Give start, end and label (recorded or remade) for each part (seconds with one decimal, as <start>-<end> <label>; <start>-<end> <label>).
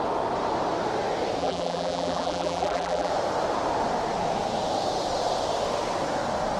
0.0-1.4 recorded; 1.4-3.1 remade; 3.1-6.6 recorded